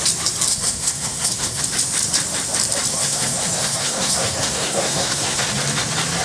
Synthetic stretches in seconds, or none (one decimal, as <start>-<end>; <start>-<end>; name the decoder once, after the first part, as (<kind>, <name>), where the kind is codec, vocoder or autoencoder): 0.5-1.6 (codec, SNAC); 2.9-5.4